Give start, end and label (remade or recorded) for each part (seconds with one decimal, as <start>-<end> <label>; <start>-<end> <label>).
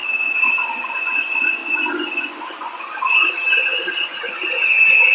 0.0-5.1 remade